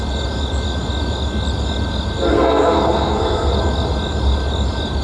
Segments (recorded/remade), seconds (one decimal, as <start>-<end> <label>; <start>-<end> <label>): 0.0-2.3 recorded; 2.3-3.5 remade; 3.5-5.0 recorded